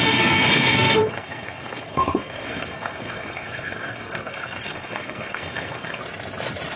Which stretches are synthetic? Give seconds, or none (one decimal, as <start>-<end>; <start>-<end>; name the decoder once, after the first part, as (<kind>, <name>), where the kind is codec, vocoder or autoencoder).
0.0-6.0 (codec, SNAC)